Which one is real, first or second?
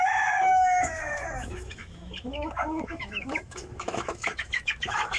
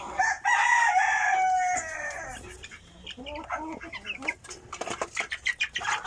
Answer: second